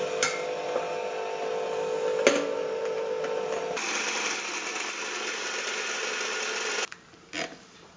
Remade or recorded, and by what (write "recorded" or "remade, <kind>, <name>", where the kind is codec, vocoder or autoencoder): recorded